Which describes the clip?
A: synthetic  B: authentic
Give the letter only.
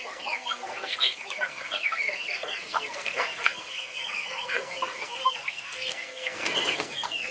A